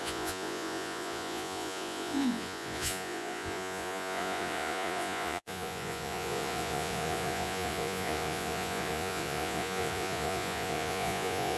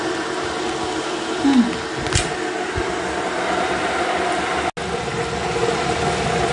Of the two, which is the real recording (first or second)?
second